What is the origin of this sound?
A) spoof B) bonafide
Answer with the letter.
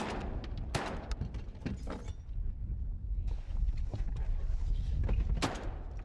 B